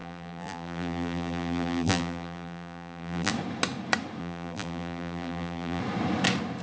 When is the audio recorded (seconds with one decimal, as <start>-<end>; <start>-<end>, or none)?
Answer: 3.3-4.2; 5.8-6.6